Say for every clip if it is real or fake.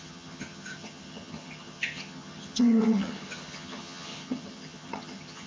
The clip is fake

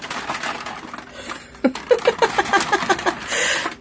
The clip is real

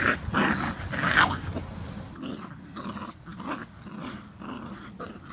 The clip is real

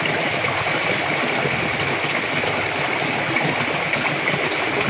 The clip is real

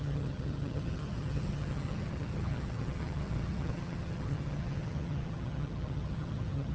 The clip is fake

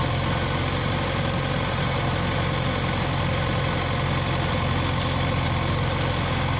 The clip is real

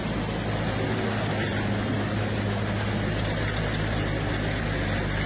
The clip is real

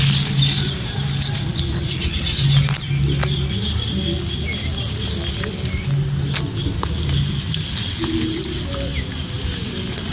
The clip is real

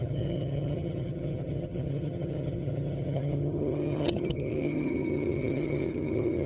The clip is fake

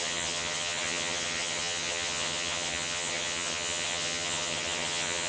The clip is fake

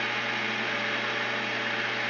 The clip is real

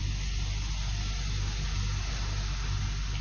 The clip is real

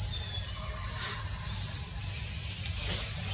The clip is real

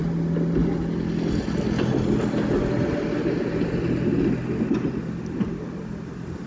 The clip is real